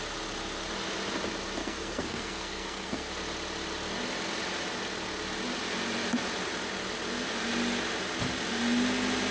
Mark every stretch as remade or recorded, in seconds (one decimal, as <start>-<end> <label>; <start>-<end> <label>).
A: 0.0-1.6 recorded; 1.6-3.1 remade; 3.1-9.3 recorded